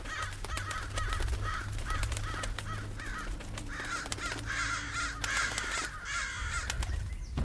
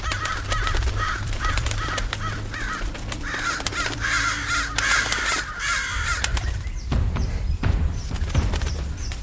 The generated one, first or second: second